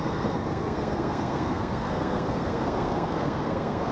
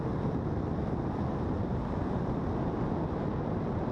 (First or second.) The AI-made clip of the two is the first